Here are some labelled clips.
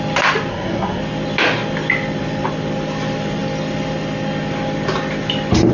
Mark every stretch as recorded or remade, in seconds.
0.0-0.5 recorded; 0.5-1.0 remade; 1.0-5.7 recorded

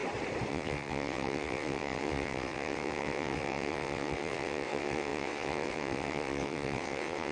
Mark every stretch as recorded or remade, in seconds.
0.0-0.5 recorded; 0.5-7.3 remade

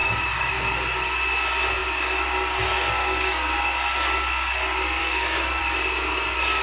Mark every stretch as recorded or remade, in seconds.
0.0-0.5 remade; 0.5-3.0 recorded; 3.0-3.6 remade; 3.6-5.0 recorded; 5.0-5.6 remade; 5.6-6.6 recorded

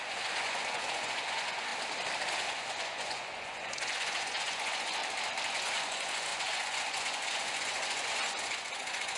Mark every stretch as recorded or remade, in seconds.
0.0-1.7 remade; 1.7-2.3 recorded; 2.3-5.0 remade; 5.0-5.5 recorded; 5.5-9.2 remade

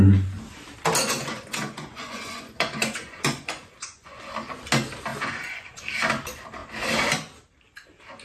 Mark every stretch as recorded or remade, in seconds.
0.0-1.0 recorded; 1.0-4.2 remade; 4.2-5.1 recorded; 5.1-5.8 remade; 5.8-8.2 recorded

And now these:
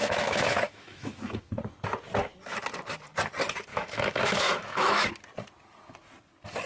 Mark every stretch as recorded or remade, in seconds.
0.0-1.5 remade; 1.5-3.7 recorded; 3.7-5.1 remade; 5.1-6.7 recorded

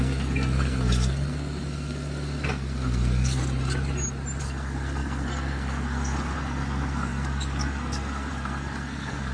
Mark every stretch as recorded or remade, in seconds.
0.0-3.4 remade; 3.4-4.4 recorded; 4.4-9.3 remade

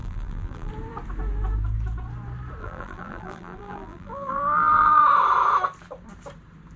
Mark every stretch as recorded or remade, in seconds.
0.0-0.7 remade; 0.7-2.6 recorded; 2.6-5.0 remade; 5.0-6.8 recorded